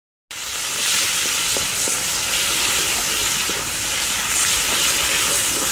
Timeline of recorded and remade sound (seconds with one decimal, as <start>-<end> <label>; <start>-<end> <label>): 0.0-3.2 recorded; 3.2-4.3 remade; 4.3-5.7 recorded